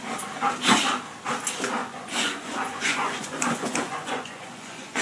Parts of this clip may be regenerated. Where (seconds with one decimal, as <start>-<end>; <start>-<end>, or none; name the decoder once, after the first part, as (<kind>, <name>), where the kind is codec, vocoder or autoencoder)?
1.8-5.0 (vocoder, Vocos)